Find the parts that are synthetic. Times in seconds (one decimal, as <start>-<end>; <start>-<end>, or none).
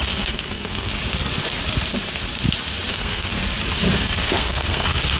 0.0-0.9; 2.9-3.3; 3.9-5.2